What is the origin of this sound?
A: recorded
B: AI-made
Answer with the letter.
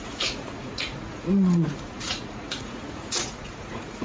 B